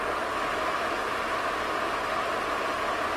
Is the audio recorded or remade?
recorded